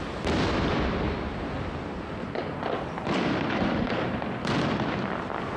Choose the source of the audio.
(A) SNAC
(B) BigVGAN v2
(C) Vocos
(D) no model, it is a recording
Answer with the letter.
D